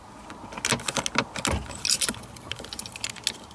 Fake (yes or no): no